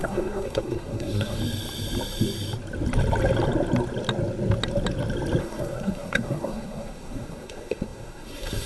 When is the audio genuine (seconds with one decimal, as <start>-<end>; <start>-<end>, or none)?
1.4-5.4